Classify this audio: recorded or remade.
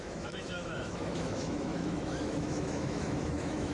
remade